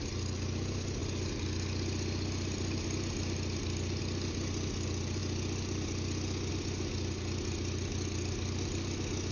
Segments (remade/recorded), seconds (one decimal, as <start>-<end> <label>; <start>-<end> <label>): 0.0-9.3 recorded